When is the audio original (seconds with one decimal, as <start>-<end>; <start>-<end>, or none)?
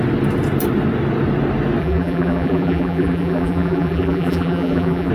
0.0-1.8